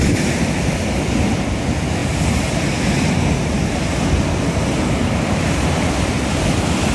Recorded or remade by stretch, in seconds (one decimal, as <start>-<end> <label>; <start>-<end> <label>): 0.0-6.9 recorded